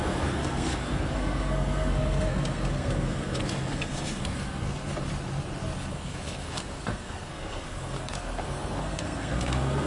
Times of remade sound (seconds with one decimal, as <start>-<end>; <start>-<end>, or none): 0.0-4.8; 5.9-9.9